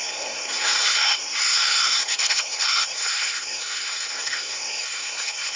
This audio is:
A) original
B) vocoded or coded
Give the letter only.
B